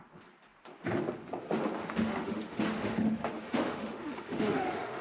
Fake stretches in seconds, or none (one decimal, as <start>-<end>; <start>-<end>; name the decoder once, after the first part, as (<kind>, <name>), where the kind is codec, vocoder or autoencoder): 1.8-5.0 (autoencoder, DAC-VAE)